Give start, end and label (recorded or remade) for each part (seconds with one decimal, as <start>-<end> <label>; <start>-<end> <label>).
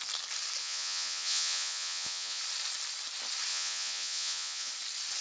0.0-0.6 recorded; 0.6-2.4 remade; 2.4-3.5 recorded; 3.5-4.7 remade; 4.7-5.2 recorded